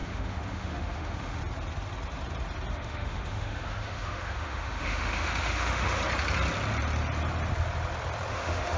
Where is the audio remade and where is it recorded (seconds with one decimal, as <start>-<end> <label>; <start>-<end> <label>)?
0.0-1.4 remade; 1.4-2.7 recorded; 2.7-6.0 remade; 6.0-8.3 recorded; 8.3-8.8 remade